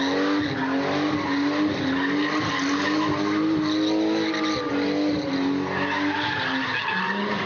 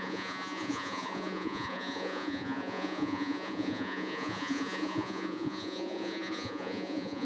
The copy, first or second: second